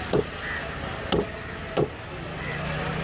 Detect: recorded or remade recorded